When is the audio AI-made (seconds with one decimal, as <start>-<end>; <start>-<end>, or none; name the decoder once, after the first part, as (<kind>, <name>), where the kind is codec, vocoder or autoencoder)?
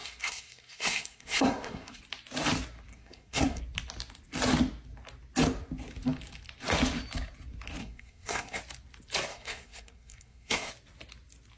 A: 0.0-2.0 (codec, SNAC); 2.9-3.6; 7.8-8.6; 9.3-10.7